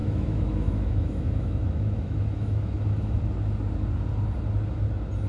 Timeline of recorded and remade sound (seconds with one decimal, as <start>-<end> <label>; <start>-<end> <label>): 0.0-3.2 remade; 3.2-5.3 recorded